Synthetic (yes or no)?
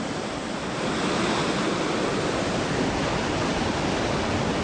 no